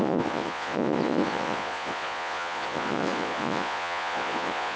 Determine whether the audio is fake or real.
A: fake